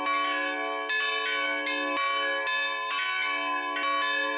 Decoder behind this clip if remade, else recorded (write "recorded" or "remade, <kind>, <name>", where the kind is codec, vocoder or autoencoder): recorded